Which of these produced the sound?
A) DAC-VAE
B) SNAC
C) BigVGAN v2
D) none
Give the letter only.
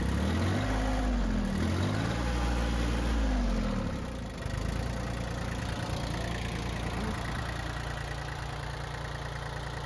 D